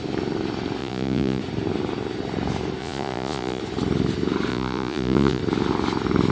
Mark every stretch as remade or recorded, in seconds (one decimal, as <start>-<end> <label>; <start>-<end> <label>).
0.0-0.8 recorded; 0.8-1.4 remade; 1.4-2.8 recorded; 2.8-3.6 remade; 3.6-4.5 recorded; 4.5-5.4 remade; 5.4-6.3 recorded